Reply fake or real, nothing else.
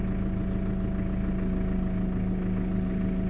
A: real